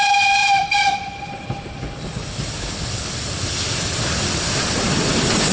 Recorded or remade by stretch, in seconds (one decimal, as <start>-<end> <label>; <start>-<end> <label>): 0.0-0.4 recorded; 0.4-1.2 remade; 1.2-5.5 recorded